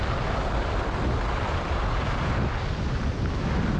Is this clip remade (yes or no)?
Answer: no